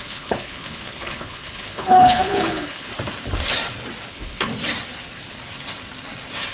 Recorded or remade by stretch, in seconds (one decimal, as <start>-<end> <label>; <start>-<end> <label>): 0.0-2.9 remade; 2.9-4.1 recorded; 4.1-4.5 remade; 4.5-6.5 recorded